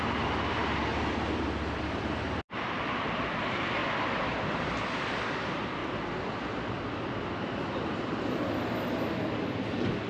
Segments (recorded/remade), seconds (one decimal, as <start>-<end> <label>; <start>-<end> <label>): 0.0-3.8 remade; 3.8-5.0 recorded; 5.0-5.8 remade; 5.8-6.3 recorded; 6.3-10.1 remade